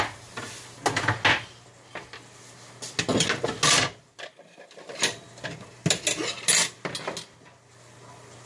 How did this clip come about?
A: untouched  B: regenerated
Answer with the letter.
A